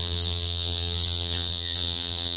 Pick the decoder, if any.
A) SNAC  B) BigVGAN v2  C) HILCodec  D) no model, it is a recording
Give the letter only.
B